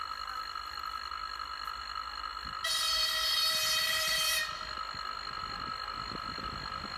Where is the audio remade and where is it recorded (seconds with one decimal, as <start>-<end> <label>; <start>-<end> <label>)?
0.0-7.0 recorded